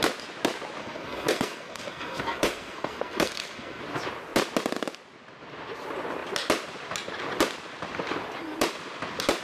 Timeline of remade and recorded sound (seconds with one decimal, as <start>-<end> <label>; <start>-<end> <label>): 0.0-0.8 recorded; 0.8-3.8 remade; 3.8-9.4 recorded